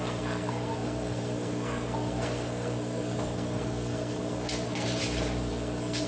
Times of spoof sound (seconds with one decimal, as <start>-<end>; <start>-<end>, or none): 0.0-5.0; 5.5-6.1